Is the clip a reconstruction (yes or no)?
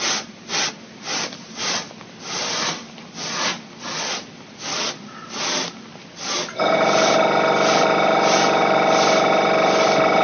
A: no